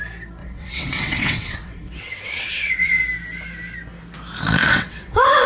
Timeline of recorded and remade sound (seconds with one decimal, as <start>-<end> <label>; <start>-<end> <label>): 0.0-0.4 recorded; 0.4-3.0 remade; 3.0-4.7 recorded; 4.7-5.5 remade